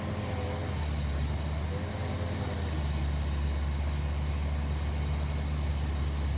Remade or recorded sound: recorded